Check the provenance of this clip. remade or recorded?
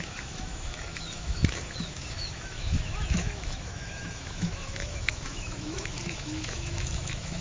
remade